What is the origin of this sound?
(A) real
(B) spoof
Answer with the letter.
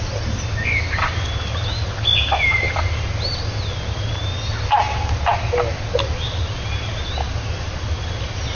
A